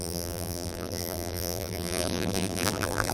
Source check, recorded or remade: remade